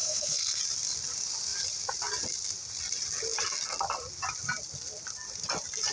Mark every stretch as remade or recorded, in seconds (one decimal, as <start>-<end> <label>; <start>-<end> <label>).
0.0-0.6 remade; 0.6-5.9 recorded